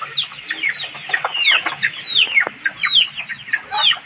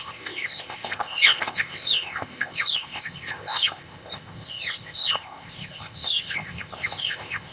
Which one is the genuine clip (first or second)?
first